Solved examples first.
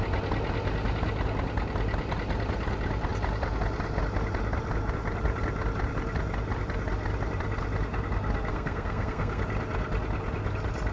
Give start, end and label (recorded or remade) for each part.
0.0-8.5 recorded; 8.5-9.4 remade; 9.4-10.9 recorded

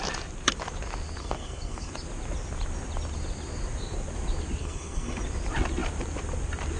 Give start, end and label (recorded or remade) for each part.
0.0-1.2 recorded; 1.2-1.9 remade; 1.9-4.6 recorded; 4.6-5.2 remade; 5.2-6.8 recorded

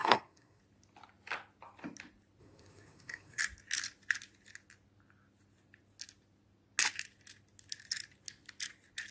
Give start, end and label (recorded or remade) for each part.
0.0-0.6 remade; 0.6-2.4 recorded; 2.4-3.4 remade; 3.4-9.1 recorded